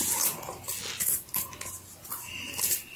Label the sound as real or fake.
real